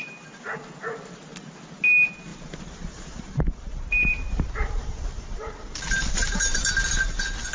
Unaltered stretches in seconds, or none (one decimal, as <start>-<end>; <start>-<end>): 0.0-2.3; 6.7-7.5